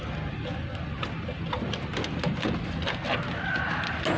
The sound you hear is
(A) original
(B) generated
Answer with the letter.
A